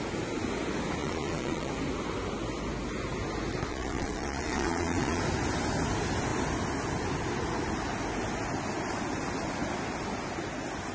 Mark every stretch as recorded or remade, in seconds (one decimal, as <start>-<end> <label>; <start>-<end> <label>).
0.0-1.0 recorded; 1.0-1.7 remade; 1.7-3.7 recorded; 3.7-5.2 remade; 5.2-10.9 recorded